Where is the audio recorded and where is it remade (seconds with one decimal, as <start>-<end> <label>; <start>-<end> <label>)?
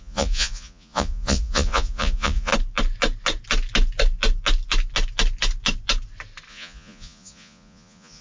0.0-2.5 remade; 2.5-6.5 recorded; 6.5-8.2 remade